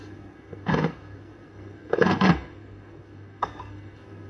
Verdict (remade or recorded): remade